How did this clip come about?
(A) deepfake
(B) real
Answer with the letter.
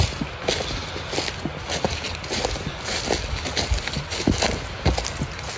B